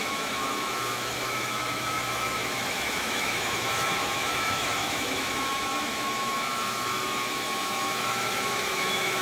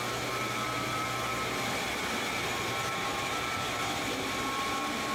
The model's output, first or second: first